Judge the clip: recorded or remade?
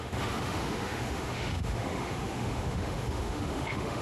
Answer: remade